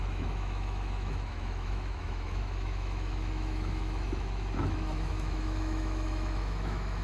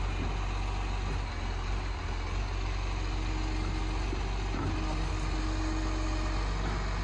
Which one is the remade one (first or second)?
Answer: first